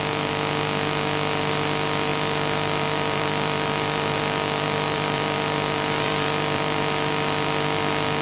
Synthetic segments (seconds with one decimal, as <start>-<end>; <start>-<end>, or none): 2.1-6.8